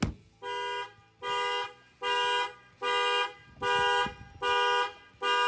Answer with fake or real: real